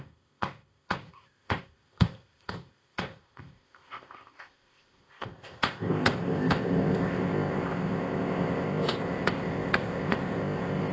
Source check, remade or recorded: remade